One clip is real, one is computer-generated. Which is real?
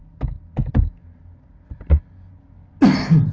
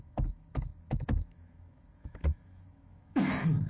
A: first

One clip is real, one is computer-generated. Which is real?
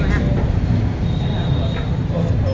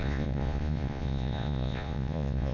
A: first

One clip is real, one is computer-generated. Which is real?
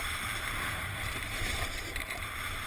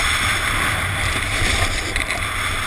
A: second